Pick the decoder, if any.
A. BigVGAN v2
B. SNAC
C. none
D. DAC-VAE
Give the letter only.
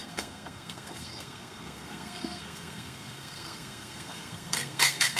B